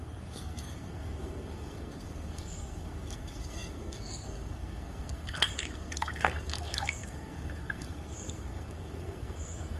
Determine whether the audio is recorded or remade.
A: remade